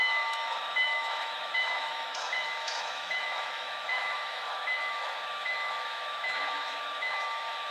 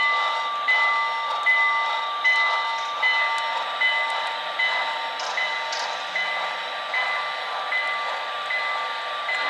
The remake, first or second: first